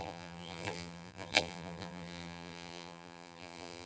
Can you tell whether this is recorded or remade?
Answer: remade